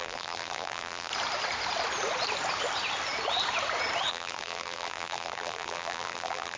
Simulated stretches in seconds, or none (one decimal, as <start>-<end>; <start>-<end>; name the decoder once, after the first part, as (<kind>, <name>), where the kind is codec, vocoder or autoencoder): 0.0-1.1 (vocoder, BigVGAN v2); 4.1-6.6